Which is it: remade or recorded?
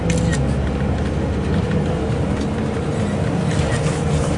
recorded